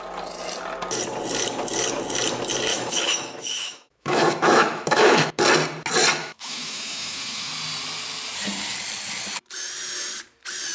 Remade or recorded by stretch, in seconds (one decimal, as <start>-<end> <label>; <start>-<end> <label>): 0.0-2.7 recorded; 2.7-5.4 remade; 5.4-6.2 recorded; 6.2-7.5 remade; 7.5-10.7 recorded